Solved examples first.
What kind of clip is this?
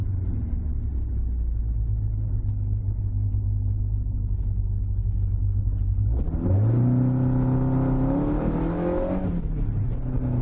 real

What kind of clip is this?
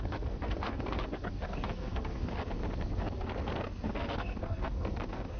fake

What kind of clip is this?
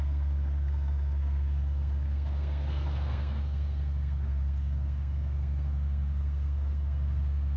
fake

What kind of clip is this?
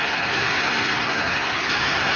fake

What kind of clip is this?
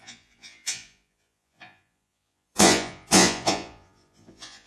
fake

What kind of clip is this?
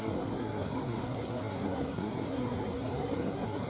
fake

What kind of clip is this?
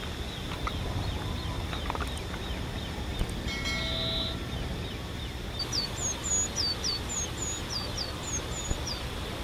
real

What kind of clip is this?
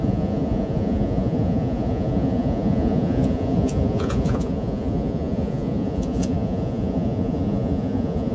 fake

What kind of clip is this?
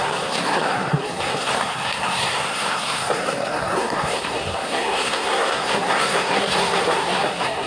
fake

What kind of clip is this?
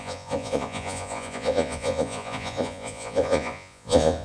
fake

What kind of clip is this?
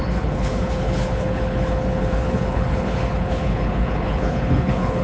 fake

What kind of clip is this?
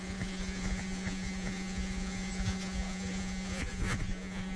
fake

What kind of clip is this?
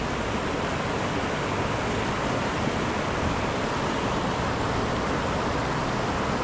real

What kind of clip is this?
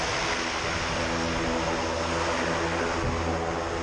real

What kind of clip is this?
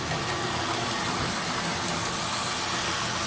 real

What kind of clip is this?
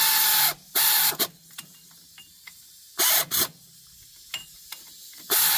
real